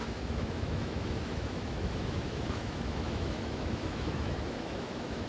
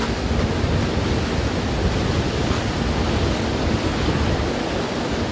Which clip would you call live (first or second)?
second